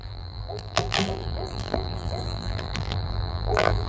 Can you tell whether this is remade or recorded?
remade